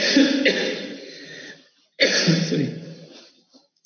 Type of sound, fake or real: real